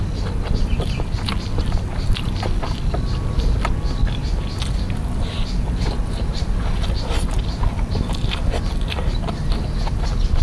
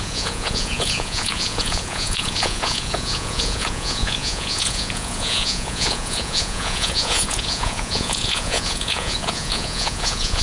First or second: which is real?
first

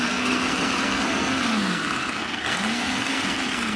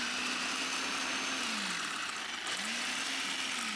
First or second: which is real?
second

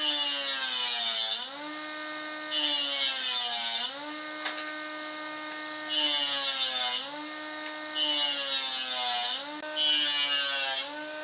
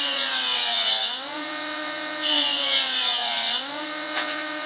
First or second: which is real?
first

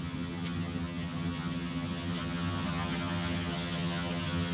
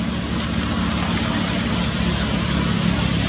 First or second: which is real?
second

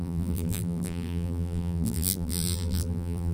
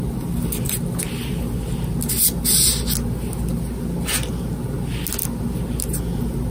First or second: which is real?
second